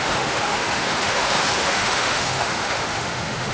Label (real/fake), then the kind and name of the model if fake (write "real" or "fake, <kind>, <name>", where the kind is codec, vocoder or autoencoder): fake, autoencoder, DAC-VAE